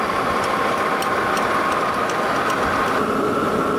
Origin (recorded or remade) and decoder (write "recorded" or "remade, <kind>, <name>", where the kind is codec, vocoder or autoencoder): recorded